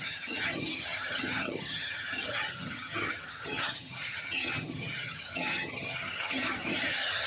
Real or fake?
fake